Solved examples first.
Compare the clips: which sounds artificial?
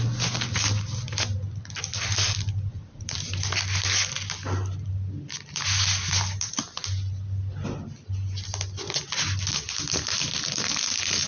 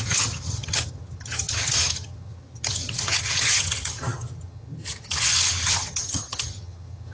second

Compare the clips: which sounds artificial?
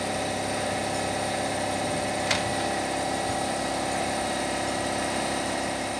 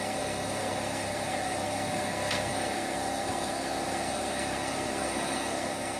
second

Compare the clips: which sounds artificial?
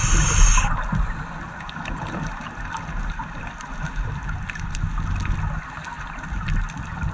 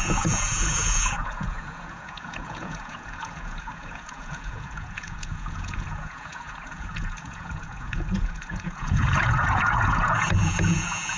second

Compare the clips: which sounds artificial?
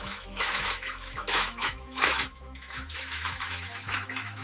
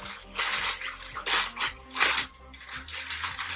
first